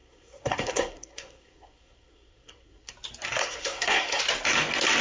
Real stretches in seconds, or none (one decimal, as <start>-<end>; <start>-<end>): 2.9-3.4; 4.2-5.0